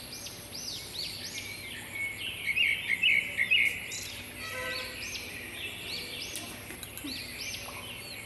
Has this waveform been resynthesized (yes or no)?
no